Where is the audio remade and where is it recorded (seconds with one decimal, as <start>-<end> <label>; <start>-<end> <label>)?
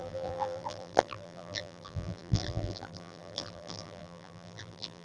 0.0-5.0 remade